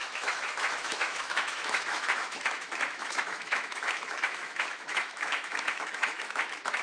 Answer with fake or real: fake